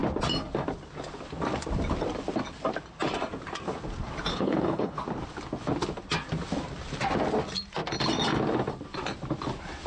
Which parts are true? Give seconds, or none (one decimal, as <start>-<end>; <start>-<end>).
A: 0.0-4.3; 5.0-9.9